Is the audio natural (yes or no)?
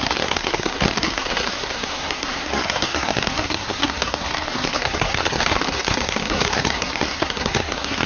no